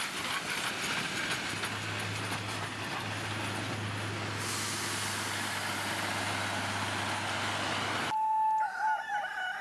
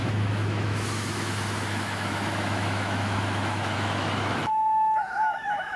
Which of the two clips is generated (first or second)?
second